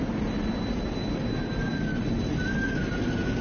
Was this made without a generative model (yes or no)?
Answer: yes